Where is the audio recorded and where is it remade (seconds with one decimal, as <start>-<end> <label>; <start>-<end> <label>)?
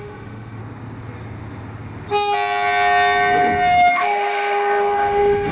0.0-0.6 remade; 0.6-3.9 recorded; 3.9-5.5 remade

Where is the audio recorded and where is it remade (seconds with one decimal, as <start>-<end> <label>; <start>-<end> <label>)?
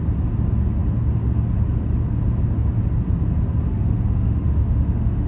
0.0-3.7 recorded; 3.7-5.3 remade